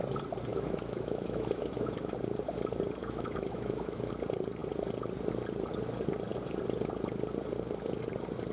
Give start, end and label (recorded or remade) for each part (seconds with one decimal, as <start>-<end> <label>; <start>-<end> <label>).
0.0-0.5 recorded; 0.5-2.2 remade; 2.2-3.0 recorded; 3.0-4.1 remade; 4.1-8.5 recorded